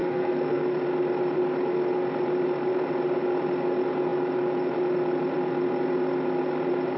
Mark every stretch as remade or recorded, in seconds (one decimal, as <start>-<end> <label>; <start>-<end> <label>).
0.0-0.6 remade; 0.6-7.0 recorded

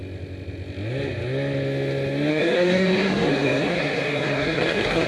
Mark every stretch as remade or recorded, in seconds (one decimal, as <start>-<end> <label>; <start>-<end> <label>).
0.0-2.3 recorded; 2.3-5.1 remade

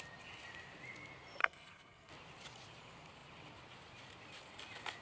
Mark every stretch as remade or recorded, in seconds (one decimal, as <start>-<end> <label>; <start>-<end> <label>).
0.0-1.4 recorded; 1.4-2.1 remade; 2.1-5.0 recorded

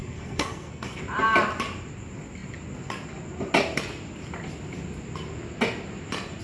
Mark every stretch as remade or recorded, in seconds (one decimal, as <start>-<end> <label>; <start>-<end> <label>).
0.0-1.0 remade; 1.0-6.4 recorded

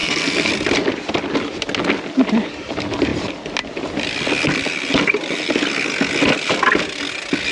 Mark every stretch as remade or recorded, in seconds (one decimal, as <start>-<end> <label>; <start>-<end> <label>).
0.0-0.5 remade; 0.5-7.5 recorded

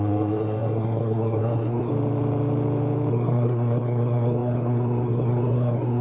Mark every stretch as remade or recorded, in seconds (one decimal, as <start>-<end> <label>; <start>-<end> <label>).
0.0-1.9 remade; 1.9-3.1 recorded; 3.1-6.0 remade